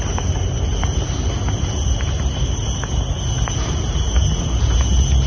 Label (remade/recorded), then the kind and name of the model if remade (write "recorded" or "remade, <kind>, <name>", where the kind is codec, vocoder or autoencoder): recorded